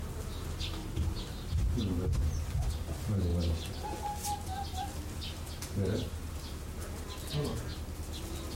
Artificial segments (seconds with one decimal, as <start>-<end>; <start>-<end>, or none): 0.8-1.7